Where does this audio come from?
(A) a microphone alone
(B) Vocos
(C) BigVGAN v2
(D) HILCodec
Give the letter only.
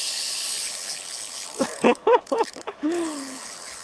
D